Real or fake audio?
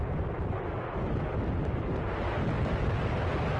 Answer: real